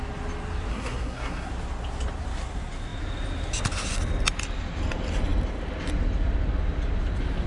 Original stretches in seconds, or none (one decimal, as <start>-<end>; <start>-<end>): 0.0-0.7; 1.5-7.5